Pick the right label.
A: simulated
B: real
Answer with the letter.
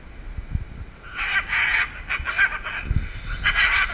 B